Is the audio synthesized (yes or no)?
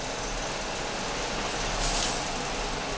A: no